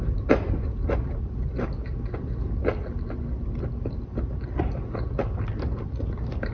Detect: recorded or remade recorded